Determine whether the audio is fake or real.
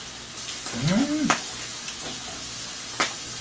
real